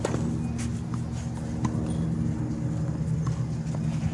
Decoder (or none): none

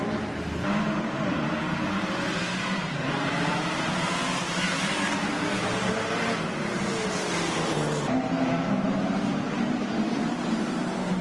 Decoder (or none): vocoder, BigVGAN v2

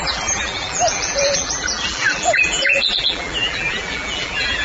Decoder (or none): vocoder, BigVGAN v2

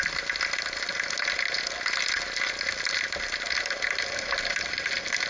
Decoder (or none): none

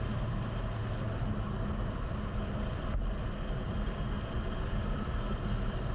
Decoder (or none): none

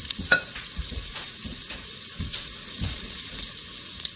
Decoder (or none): vocoder, Vocos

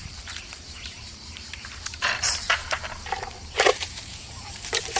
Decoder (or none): vocoder, BigVGAN v2